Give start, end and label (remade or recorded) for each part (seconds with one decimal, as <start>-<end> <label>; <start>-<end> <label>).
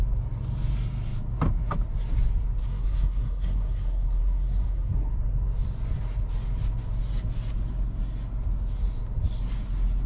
0.0-2.6 recorded; 2.6-5.1 remade; 5.1-10.1 recorded